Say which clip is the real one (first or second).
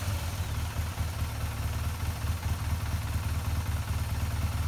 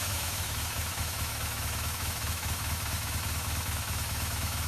first